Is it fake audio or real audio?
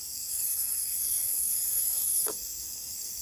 fake